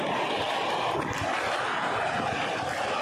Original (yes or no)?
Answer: yes